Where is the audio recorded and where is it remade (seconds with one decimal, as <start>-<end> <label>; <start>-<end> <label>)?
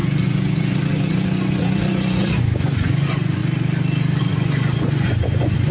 0.0-3.4 remade; 3.4-4.2 recorded; 4.2-5.7 remade